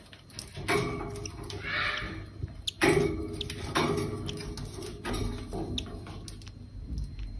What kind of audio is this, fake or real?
real